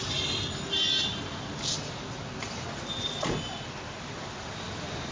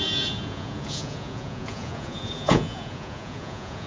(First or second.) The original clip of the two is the first